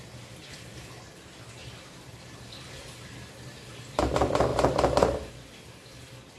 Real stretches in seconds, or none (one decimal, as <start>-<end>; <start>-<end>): 0.0-6.4